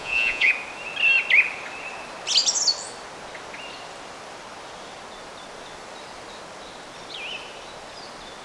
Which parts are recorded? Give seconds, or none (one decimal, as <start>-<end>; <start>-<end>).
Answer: 0.5-8.4